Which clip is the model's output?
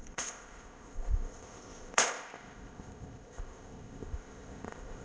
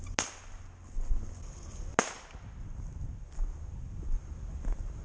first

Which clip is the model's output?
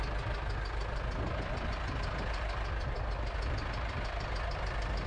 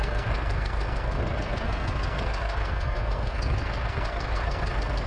second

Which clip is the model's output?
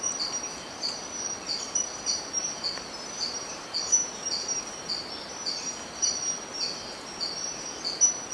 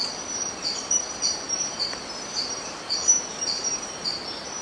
second